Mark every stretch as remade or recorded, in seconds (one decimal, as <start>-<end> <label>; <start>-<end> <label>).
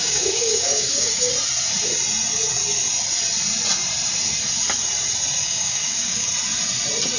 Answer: 0.0-1.3 remade; 1.3-5.4 recorded; 5.4-6.3 remade; 6.3-7.2 recorded